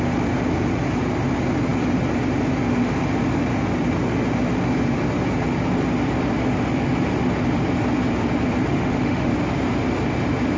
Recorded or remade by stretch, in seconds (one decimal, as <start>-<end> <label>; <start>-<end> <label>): 0.0-8.7 recorded; 8.7-9.3 remade; 9.3-10.6 recorded